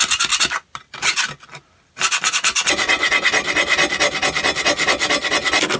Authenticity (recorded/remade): recorded